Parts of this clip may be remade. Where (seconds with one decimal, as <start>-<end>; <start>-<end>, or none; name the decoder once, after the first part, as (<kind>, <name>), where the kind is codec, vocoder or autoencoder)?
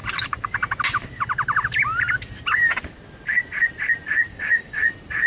4.3-4.8 (codec, DAC)